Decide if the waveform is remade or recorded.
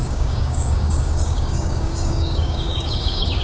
remade